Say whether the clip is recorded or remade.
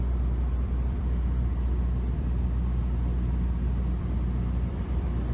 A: remade